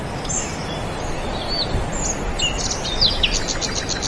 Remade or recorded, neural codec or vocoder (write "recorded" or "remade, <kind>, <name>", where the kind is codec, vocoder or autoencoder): recorded